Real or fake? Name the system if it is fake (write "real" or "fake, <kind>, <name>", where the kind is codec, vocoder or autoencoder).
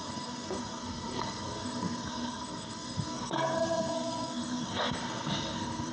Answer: fake, codec, SNAC